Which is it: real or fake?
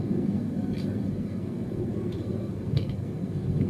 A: fake